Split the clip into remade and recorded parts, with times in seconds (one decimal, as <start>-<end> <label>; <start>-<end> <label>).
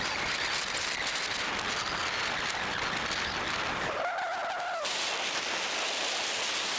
0.0-6.8 recorded